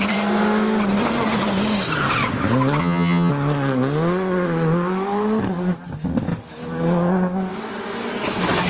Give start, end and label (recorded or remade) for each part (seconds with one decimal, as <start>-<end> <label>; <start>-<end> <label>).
0.0-2.8 recorded; 2.8-3.3 remade; 3.3-8.7 recorded